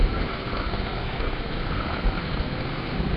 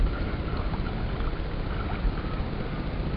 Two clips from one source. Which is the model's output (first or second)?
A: first